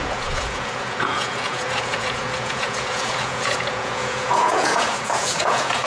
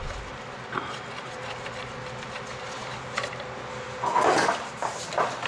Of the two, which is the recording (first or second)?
second